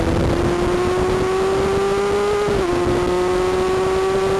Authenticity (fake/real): real